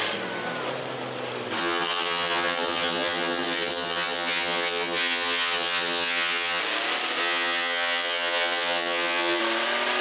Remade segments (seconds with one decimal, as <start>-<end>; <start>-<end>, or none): 1.6-6.6; 7.2-9.4